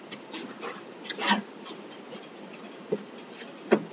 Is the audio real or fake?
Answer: real